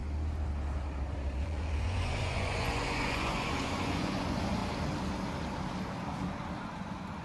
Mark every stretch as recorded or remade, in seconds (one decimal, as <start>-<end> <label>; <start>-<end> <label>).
0.0-1.4 recorded; 1.4-4.6 remade; 4.6-6.6 recorded; 6.6-7.2 remade